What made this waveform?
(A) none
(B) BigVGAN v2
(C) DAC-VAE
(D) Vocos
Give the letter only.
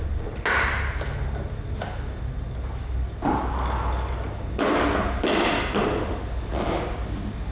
A